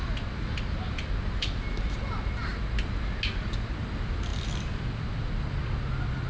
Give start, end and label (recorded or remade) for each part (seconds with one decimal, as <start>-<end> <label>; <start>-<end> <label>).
0.0-6.3 recorded